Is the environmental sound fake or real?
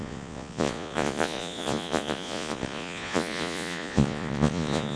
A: fake